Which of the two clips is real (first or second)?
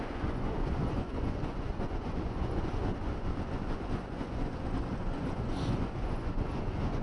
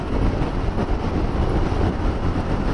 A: second